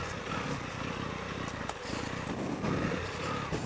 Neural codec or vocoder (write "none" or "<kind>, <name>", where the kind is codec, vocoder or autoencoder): none